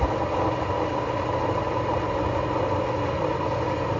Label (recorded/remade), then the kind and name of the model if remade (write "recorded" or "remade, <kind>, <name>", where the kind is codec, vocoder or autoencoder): recorded